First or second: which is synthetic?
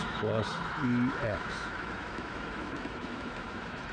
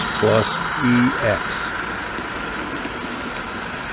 first